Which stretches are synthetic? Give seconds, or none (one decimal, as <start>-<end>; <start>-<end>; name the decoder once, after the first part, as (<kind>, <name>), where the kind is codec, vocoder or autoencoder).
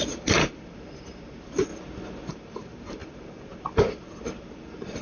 0.0-1.7 (vocoder, BigVGAN v2); 2.3-5.0